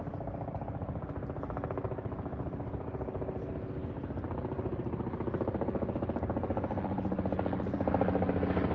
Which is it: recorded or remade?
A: recorded